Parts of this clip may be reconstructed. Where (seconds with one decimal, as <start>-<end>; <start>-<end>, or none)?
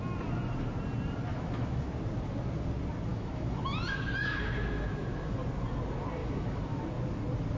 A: 1.3-1.9; 3.1-5.4; 6.2-6.8